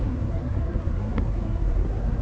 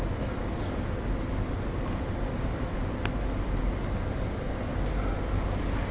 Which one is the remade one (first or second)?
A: first